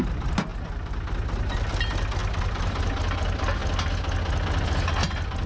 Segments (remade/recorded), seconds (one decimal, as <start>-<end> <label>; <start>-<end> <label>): 0.0-0.5 remade; 0.5-1.7 recorded; 1.7-3.6 remade; 3.6-5.5 recorded